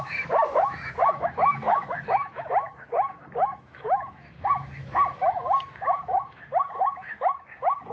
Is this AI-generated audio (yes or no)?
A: yes